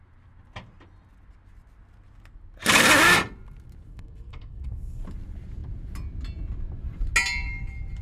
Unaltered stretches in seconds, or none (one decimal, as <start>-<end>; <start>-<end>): 0.0-3.9; 5.0-8.0